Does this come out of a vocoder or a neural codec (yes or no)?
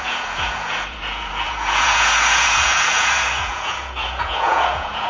yes